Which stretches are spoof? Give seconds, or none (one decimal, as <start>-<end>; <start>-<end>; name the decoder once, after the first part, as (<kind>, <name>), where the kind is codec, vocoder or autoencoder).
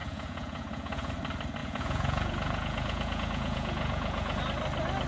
0.0-1.1 (vocoder, Vocos); 1.6-4.4